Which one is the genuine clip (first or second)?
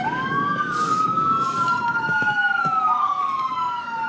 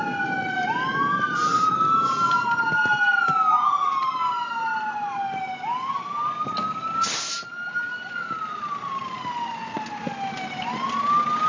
second